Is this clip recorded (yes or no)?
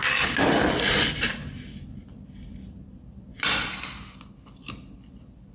yes